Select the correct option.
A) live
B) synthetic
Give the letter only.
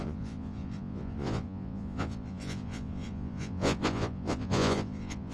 B